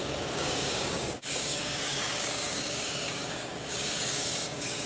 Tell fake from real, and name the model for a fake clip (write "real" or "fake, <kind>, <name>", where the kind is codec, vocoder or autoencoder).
fake, codec, DAC